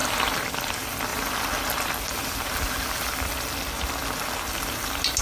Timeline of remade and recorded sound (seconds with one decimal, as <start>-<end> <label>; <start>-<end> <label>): 0.0-5.2 recorded